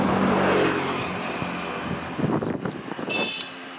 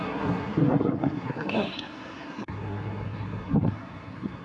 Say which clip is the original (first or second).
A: first